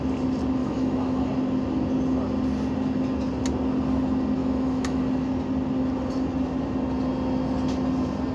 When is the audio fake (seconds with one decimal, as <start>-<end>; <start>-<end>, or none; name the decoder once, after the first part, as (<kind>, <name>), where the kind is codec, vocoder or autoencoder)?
0.6-1.3 (autoencoder, DAC-VAE); 4.4-5.0